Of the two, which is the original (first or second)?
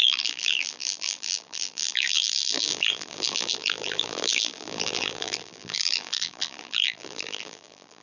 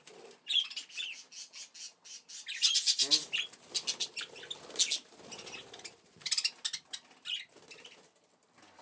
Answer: second